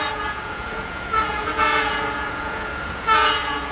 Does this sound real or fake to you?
fake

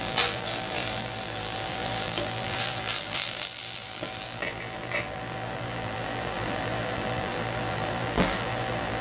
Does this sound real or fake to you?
fake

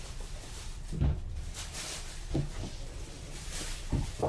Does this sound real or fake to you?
fake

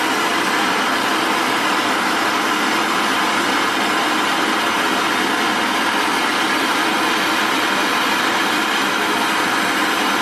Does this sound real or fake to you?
fake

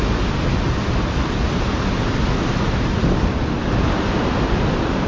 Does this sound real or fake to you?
real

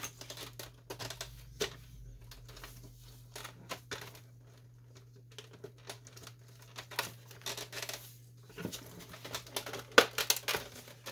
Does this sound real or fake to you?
real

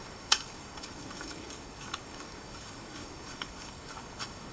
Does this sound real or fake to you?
fake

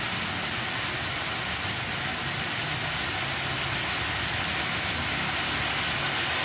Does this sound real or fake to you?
real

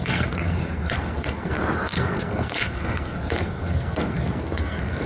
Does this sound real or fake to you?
fake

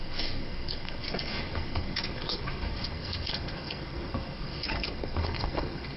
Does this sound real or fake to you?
fake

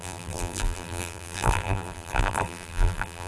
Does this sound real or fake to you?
fake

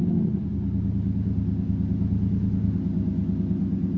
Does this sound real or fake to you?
real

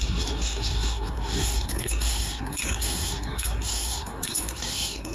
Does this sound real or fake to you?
fake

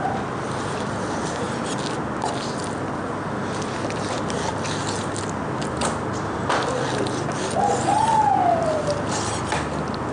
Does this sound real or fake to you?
real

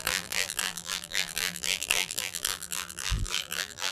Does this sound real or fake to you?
fake